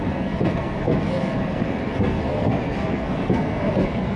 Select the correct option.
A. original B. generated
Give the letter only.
B